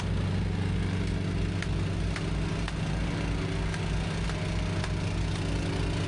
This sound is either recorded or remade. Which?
recorded